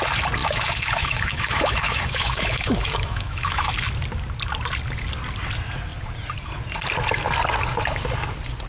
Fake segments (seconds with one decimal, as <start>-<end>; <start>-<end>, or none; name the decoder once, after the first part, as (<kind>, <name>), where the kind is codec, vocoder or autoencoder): 0.4-3.7 (autoencoder, DAC-VAE)